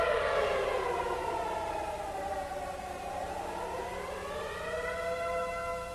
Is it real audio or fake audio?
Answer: fake